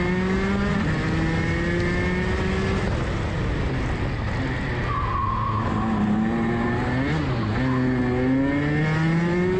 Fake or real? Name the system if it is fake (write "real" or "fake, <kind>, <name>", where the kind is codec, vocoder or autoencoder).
real